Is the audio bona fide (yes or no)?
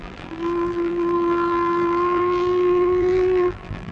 no